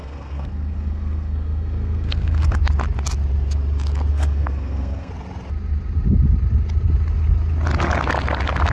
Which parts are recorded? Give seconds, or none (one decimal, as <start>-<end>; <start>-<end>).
2.6-4.1; 5.1-8.7